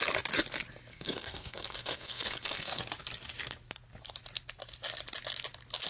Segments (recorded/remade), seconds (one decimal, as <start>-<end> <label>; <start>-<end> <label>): 0.0-0.9 recorded; 0.9-2.8 remade; 2.8-5.9 recorded